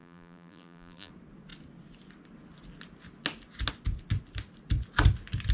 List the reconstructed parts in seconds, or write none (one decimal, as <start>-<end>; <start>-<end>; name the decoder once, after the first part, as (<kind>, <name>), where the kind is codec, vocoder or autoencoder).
0.0-1.1 (vocoder, BigVGAN v2)